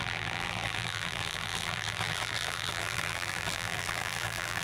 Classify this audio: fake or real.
fake